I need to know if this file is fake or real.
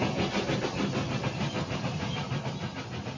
real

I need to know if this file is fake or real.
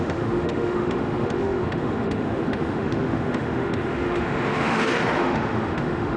fake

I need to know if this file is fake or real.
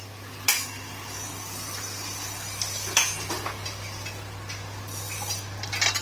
real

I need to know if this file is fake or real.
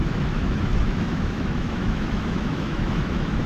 fake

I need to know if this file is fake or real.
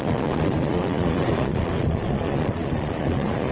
fake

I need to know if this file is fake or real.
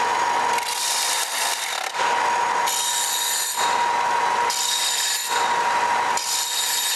real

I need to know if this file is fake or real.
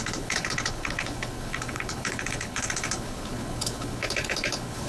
fake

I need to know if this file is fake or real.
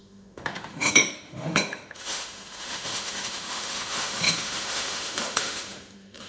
fake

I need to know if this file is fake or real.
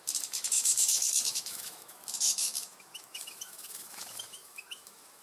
fake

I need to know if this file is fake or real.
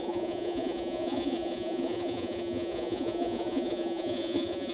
fake